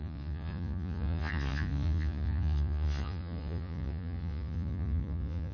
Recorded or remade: remade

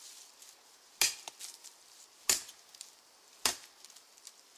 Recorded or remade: recorded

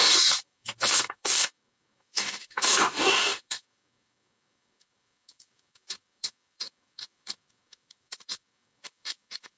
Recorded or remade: remade